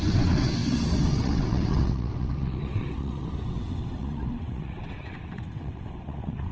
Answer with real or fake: fake